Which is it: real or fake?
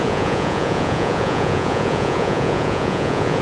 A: fake